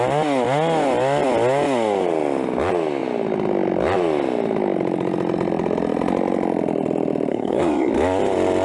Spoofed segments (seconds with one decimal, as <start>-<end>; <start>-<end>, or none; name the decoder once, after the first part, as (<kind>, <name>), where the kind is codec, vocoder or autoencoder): 7.3-7.9 (codec, SNAC)